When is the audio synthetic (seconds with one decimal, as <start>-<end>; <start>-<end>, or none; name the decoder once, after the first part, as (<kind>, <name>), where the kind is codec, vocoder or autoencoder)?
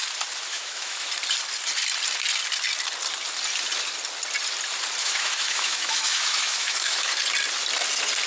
0.5-1.1 (autoencoder, DAC-VAE); 5.0-7.1